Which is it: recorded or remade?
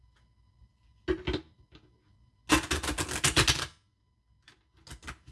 recorded